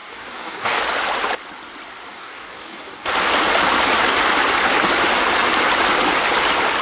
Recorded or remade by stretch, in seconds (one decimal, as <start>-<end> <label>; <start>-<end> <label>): 0.0-0.8 remade; 0.8-2.1 recorded; 2.1-3.1 remade; 3.1-6.8 recorded